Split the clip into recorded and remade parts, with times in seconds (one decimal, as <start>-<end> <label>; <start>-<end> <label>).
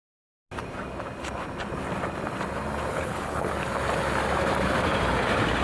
0.0-2.9 recorded; 2.9-3.5 remade; 3.5-5.6 recorded